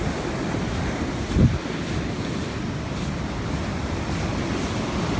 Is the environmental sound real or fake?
real